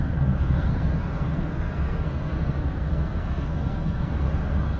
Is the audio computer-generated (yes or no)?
yes